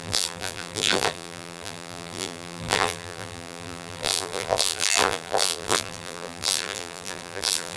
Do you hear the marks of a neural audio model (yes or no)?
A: yes